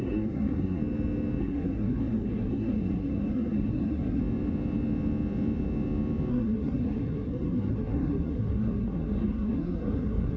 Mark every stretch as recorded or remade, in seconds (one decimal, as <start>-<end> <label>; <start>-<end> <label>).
0.0-0.8 remade; 0.8-1.4 recorded; 1.4-4.2 remade; 4.2-6.3 recorded; 6.3-10.4 remade